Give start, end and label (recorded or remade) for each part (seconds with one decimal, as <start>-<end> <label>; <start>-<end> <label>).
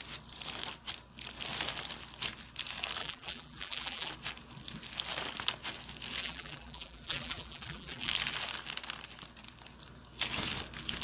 0.0-3.0 recorded; 3.0-4.1 remade; 4.1-6.2 recorded; 6.2-8.1 remade; 8.1-11.0 recorded